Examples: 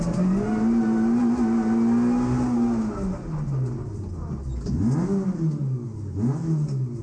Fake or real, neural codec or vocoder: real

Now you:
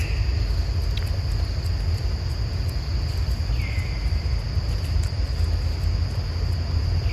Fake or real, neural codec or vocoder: real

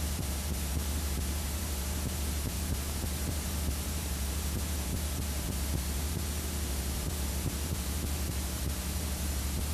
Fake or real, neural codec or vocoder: fake, vocoder, BigVGAN v2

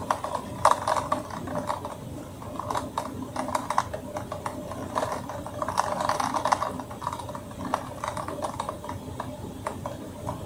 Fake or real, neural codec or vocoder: real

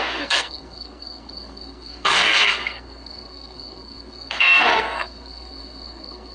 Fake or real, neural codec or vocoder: fake, codec, SNAC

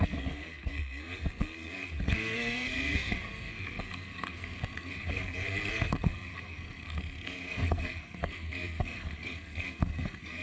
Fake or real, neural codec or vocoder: fake, codec, SNAC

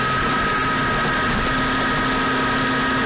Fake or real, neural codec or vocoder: real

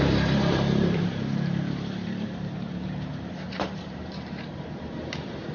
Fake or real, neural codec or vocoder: fake, vocoder, BigVGAN v2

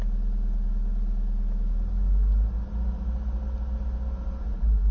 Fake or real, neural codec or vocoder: real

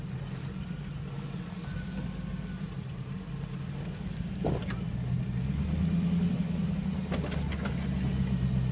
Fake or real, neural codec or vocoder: real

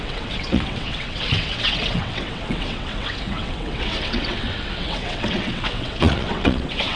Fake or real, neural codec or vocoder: fake, vocoder, WaveNeXt